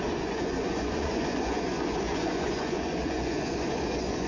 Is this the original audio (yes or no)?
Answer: no